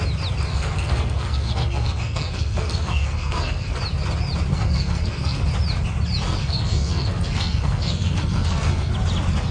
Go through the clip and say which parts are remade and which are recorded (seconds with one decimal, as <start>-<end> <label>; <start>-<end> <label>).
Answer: 0.0-0.5 recorded; 0.5-3.8 remade; 3.8-4.5 recorded; 4.5-5.4 remade; 5.4-6.4 recorded; 6.4-8.9 remade; 8.9-9.5 recorded